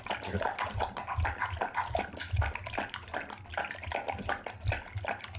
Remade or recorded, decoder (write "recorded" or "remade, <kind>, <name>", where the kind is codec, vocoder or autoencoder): recorded